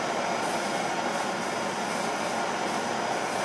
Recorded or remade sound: recorded